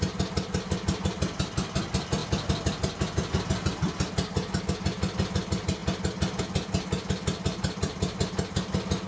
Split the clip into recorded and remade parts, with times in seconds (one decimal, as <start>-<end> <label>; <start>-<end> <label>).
0.0-9.1 recorded